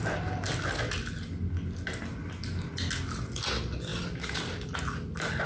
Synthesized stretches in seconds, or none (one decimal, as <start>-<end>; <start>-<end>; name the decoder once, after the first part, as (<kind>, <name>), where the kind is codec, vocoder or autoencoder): none